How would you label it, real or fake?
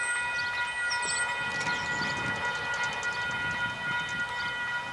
real